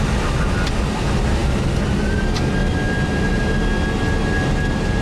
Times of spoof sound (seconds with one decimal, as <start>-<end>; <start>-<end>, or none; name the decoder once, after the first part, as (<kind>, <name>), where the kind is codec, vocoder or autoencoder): none